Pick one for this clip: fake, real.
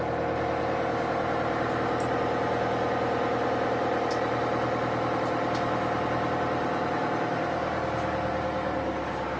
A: real